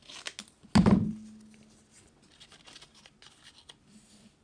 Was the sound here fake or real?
real